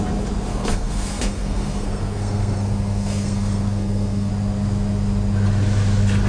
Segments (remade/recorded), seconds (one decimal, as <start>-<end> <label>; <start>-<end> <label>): 0.0-0.5 recorded; 0.5-4.3 remade; 4.3-6.3 recorded